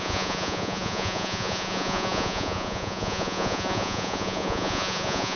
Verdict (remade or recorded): remade